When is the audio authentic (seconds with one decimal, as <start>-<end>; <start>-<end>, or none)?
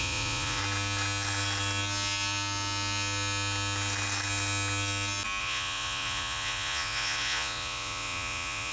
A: 0.6-5.4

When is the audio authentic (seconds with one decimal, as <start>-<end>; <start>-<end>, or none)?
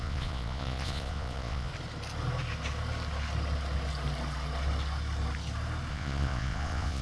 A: 1.7-5.9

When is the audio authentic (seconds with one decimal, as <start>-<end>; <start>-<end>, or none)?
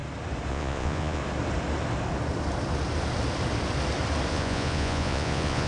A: 0.0-0.5; 1.2-4.3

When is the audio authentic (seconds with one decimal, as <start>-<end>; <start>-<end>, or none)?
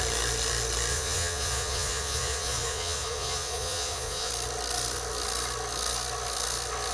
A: 0.0-0.9; 4.3-6.9